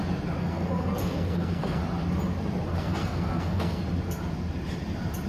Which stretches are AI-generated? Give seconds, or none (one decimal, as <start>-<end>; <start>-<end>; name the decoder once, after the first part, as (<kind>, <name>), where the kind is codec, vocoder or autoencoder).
0.4-1.8 (codec, SNAC); 2.7-3.8